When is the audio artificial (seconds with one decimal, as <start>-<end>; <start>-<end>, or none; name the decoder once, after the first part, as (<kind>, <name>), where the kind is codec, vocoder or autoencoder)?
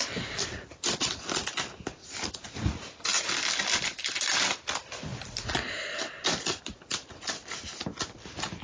none